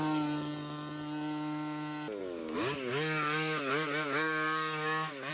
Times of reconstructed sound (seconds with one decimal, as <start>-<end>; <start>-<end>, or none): 2.2-5.3

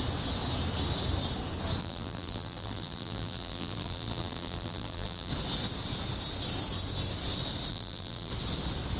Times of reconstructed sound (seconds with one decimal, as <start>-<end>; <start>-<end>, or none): 1.8-5.3; 7.7-8.3

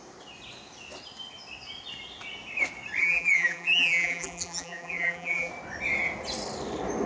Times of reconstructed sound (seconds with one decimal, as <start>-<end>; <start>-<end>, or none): 3.0-5.5